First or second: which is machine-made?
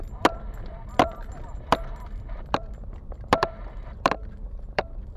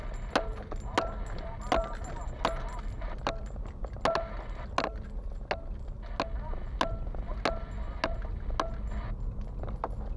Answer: first